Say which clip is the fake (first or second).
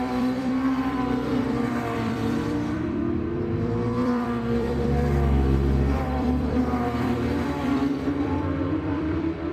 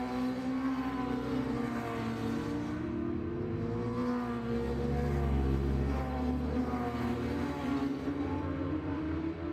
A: first